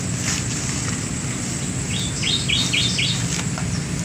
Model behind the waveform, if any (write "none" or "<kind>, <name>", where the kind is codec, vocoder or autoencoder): none